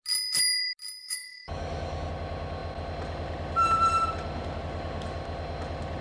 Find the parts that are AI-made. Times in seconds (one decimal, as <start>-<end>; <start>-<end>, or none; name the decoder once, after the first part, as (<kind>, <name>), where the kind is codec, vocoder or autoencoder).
1.0-2.1 (codec, DAC)